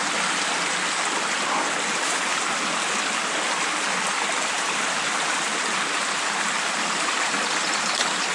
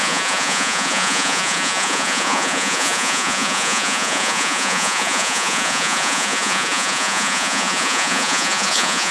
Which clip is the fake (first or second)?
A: second